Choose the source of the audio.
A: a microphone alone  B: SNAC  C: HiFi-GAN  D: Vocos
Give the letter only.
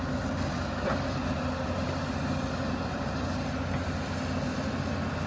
A